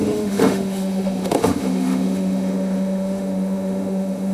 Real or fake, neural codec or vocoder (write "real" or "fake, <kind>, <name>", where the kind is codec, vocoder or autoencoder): fake, autoencoder, DAC-VAE